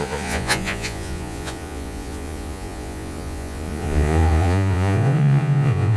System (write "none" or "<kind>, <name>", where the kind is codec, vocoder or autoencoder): vocoder, Vocos